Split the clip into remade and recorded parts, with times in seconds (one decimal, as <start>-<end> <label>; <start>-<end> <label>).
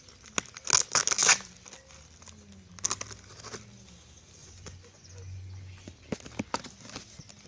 0.0-4.4 recorded; 4.4-5.9 remade; 5.9-7.5 recorded